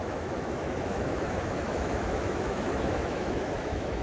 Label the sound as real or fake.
fake